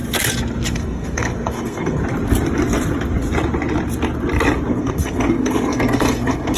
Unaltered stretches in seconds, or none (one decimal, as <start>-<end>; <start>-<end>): 0.0-0.7; 2.0-4.7